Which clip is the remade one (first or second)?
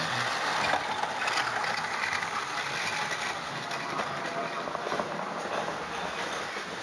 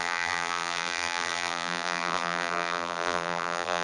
second